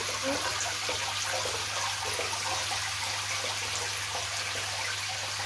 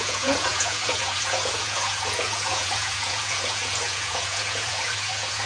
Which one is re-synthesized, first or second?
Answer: second